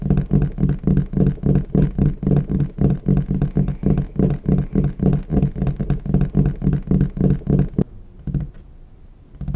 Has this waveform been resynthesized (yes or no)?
no